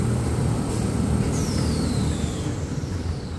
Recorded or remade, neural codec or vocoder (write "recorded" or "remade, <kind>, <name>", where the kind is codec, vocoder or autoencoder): remade, vocoder, BigVGAN v2